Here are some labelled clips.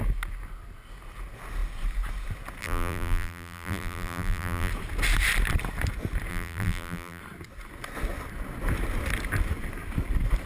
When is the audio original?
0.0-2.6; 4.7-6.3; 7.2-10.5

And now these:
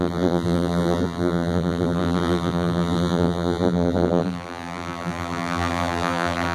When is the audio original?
none

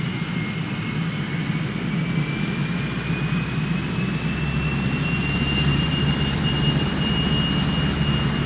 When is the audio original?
0.0-5.7; 7.3-8.5

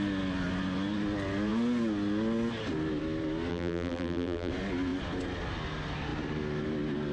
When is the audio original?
0.0-3.5; 4.5-7.1

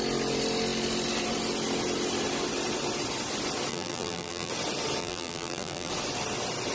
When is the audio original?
0.0-3.7; 4.5-5.0; 5.9-6.7